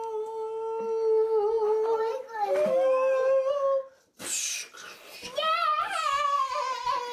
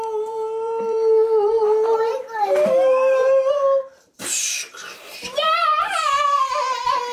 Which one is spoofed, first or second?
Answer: second